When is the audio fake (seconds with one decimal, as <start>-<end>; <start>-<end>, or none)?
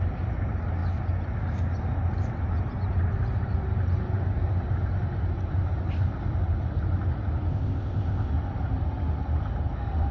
7.5-8.3